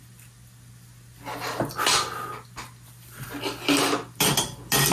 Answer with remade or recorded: recorded